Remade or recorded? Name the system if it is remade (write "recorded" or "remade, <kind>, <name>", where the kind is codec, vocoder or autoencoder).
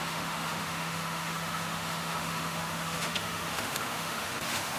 remade, autoencoder, DAC-VAE